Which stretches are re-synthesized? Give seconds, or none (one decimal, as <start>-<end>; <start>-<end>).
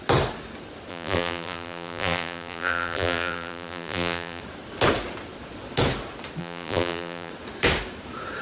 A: 0.9-4.4; 6.4-7.3